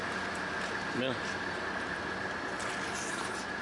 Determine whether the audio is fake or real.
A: real